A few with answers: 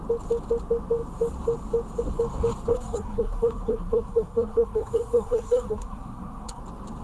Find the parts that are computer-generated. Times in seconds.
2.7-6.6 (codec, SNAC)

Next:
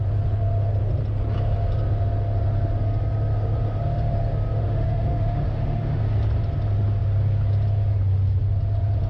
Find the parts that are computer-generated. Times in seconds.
4.6-6.0 (autoencoder, DAC-VAE)